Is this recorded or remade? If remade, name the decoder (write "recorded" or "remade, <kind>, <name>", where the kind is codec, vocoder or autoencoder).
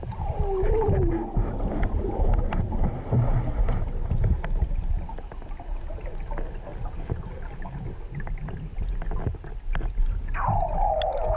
recorded